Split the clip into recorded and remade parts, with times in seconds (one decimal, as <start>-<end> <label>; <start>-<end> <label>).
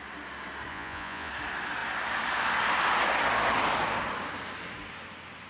0.0-0.7 recorded; 0.7-1.3 remade; 1.3-5.5 recorded